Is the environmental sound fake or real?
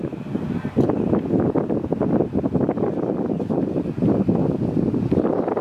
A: real